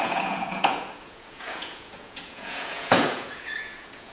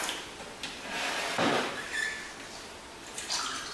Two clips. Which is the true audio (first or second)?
second